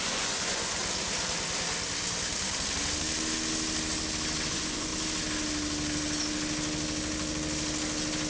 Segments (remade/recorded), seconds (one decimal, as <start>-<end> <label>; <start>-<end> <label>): 0.0-0.8 remade; 0.8-4.5 recorded; 4.5-4.9 remade; 4.9-8.3 recorded

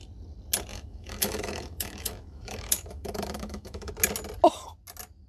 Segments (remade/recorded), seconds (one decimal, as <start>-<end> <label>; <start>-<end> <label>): 0.0-0.7 recorded; 0.7-3.9 remade; 3.9-5.3 recorded

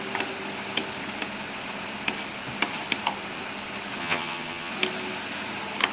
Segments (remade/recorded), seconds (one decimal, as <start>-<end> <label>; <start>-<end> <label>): 0.0-4.0 recorded; 4.0-4.7 remade; 4.7-5.9 recorded

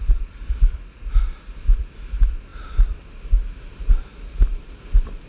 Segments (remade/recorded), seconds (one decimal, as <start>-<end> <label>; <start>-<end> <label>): 0.0-5.3 recorded

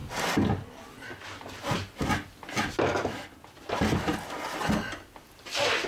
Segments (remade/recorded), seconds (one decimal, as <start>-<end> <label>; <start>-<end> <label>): 0.0-5.9 recorded

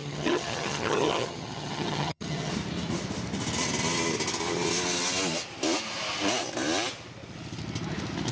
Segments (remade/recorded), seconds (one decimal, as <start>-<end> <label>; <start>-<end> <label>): 0.0-2.5 remade; 2.5-8.3 recorded

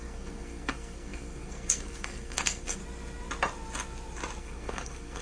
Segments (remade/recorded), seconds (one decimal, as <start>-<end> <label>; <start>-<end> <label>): 0.0-2.8 remade; 2.8-4.4 recorded; 4.4-5.2 remade

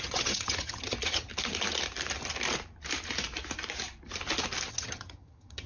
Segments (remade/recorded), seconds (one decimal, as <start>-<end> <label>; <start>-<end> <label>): 0.0-1.3 remade; 1.3-4.7 recorded; 4.7-5.7 remade